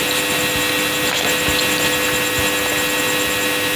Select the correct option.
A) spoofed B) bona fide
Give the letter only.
B